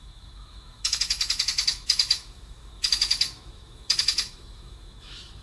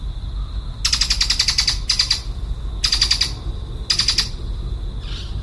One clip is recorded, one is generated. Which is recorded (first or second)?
second